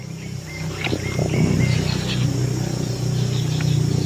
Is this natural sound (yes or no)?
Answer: yes